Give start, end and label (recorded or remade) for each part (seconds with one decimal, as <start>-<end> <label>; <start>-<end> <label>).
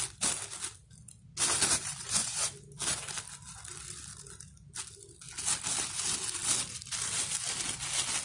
0.0-2.0 recorded; 2.0-2.5 remade; 2.5-8.2 recorded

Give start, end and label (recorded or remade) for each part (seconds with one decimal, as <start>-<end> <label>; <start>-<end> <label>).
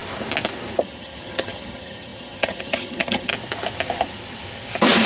0.0-0.8 recorded; 0.8-3.3 remade; 3.3-5.1 recorded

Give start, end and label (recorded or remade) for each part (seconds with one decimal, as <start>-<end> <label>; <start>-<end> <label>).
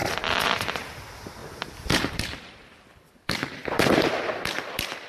0.0-1.4 remade; 1.4-2.9 recorded; 2.9-3.6 remade; 3.6-5.1 recorded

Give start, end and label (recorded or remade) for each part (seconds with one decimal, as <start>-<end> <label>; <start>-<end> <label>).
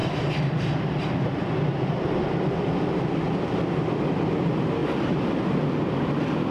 0.0-2.9 remade; 2.9-6.5 recorded